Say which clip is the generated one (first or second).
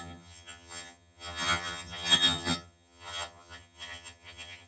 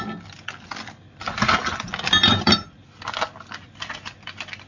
first